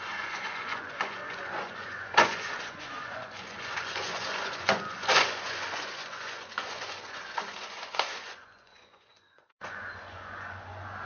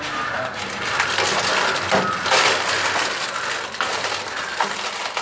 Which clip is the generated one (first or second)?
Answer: first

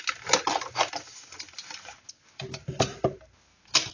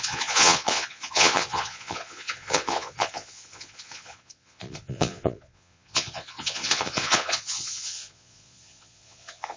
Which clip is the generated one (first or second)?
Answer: second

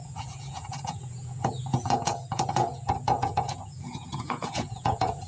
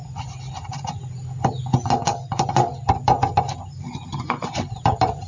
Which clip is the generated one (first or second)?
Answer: first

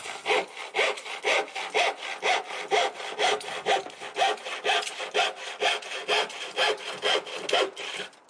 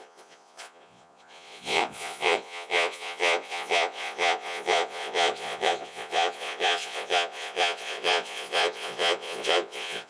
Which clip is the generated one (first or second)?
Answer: second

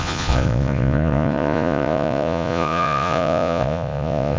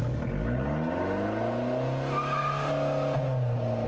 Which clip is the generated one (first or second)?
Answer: first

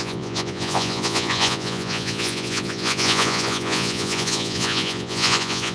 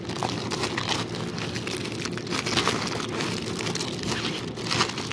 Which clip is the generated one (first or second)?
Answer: first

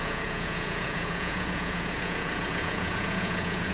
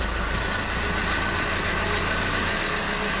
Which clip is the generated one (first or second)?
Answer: first